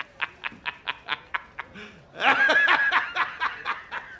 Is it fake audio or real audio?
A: real